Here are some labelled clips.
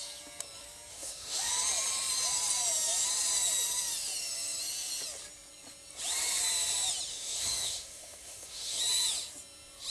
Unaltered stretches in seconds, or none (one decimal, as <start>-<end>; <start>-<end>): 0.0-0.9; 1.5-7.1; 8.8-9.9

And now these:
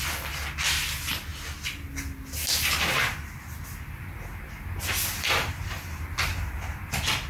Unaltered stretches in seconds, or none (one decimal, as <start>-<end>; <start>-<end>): 0.0-7.3

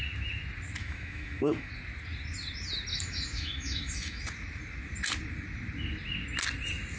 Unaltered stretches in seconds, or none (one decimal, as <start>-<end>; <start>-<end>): 0.0-0.8; 1.7-2.9; 4.2-7.0

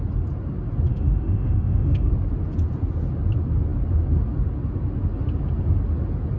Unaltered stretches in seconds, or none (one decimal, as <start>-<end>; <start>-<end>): 0.0-0.9; 2.1-6.4